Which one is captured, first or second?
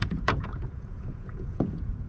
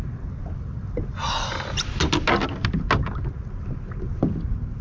second